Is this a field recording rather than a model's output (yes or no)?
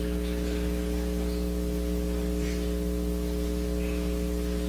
yes